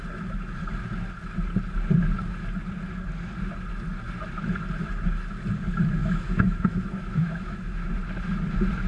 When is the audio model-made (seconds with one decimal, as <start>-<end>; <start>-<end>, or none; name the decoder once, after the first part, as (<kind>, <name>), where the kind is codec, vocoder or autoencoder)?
6.0-7.9 (autoencoder, DAC-VAE)